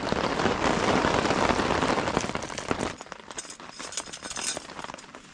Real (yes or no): yes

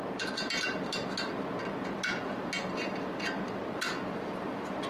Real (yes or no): yes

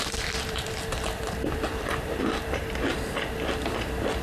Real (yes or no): no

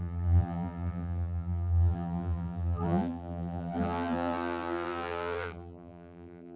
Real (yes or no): no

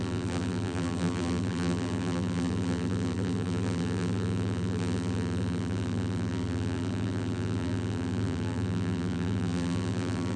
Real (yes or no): no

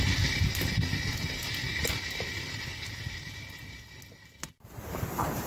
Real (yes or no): yes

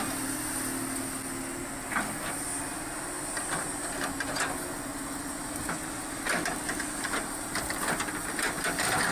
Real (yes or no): yes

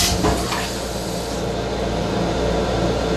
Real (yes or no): yes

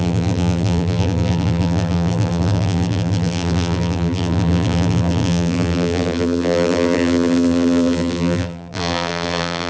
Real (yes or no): no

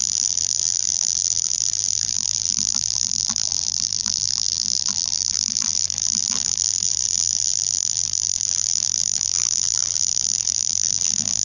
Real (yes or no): no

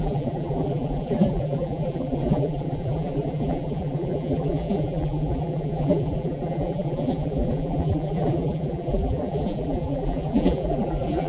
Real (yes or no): no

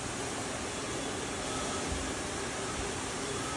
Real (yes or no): no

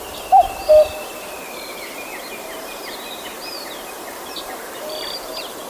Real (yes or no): no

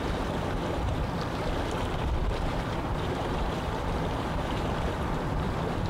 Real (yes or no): no